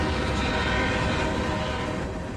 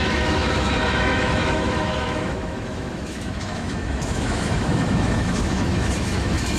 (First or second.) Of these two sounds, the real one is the first